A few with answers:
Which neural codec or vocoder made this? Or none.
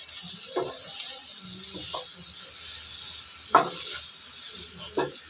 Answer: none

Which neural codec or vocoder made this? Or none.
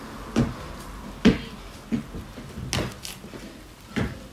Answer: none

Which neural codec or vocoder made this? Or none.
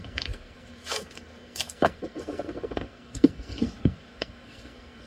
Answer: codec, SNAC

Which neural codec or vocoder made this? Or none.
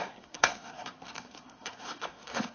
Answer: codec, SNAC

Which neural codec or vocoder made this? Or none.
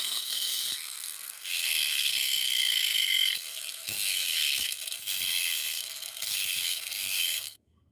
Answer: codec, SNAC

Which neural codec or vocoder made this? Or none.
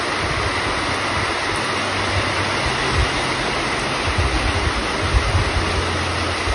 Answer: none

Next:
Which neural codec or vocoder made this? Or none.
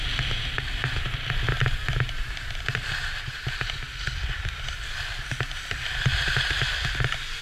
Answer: none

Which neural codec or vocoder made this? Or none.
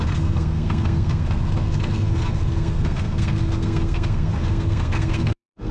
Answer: codec, SNAC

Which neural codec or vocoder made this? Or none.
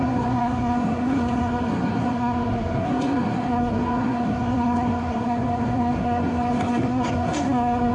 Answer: codec, SNAC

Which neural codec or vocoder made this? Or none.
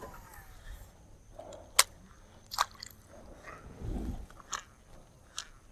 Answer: none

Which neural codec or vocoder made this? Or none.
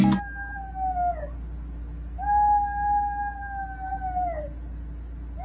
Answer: none